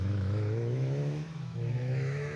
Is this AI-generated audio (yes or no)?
yes